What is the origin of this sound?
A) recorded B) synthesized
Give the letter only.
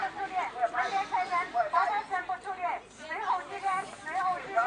A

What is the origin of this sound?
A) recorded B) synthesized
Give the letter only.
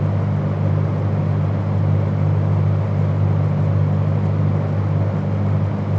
A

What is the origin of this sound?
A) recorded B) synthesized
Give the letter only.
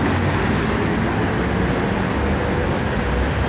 A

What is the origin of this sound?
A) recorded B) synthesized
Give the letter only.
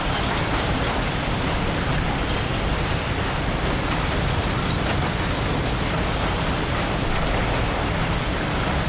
A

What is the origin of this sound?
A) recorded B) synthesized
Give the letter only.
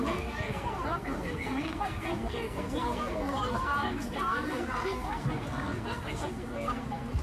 B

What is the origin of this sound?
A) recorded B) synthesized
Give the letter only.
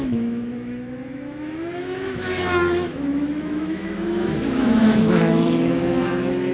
B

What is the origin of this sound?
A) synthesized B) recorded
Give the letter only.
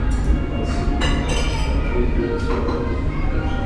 B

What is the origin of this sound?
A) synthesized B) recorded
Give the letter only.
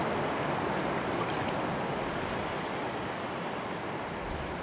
A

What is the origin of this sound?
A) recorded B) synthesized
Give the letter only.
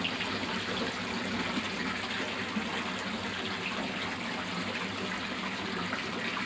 A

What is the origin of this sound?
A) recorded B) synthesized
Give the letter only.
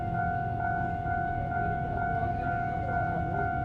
B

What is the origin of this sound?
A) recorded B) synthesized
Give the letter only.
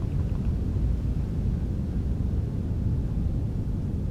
A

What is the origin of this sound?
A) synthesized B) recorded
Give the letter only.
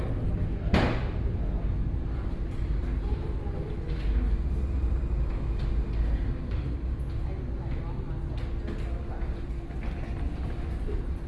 B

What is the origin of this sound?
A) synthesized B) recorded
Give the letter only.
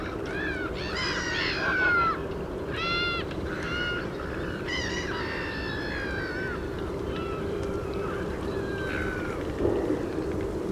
A